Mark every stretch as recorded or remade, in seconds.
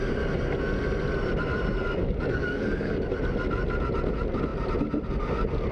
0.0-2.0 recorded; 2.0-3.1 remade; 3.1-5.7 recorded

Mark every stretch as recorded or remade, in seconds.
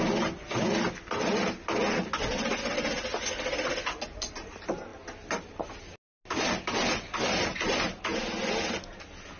0.0-9.4 recorded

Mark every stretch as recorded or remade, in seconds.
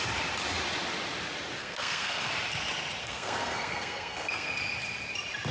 0.0-1.6 recorded; 1.6-2.3 remade; 2.3-3.0 recorded; 3.0-4.5 remade; 4.5-5.5 recorded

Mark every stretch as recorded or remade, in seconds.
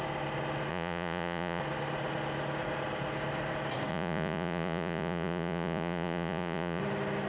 0.0-0.7 recorded; 0.7-1.6 remade; 1.6-3.9 recorded; 3.9-6.8 remade; 6.8-7.3 recorded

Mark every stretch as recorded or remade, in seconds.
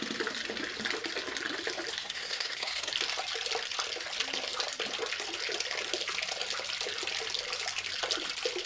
0.0-2.0 recorded; 2.0-2.9 remade; 2.9-8.7 recorded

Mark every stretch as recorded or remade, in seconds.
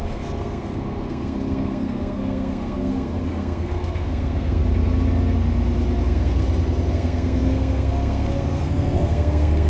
0.0-4.6 remade; 4.6-6.0 recorded; 6.0-6.4 remade; 6.4-6.9 recorded; 6.9-9.7 remade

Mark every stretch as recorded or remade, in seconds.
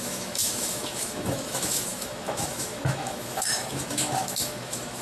0.0-5.0 remade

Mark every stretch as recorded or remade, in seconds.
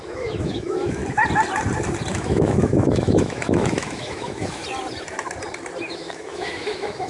0.0-1.0 remade; 1.0-2.1 recorded; 2.1-4.6 remade; 4.6-5.8 recorded; 5.8-7.1 remade